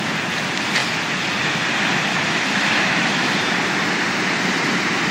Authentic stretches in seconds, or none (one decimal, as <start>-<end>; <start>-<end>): 0.0-2.1; 3.4-5.1